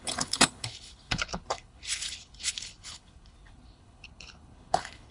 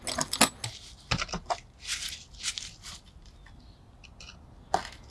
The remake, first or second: first